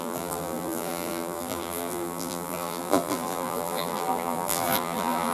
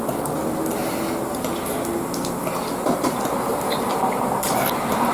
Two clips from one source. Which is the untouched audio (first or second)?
second